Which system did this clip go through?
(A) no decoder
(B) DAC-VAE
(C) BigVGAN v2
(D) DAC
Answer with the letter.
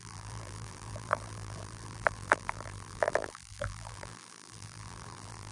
C